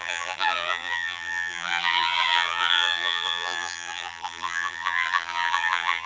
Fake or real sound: fake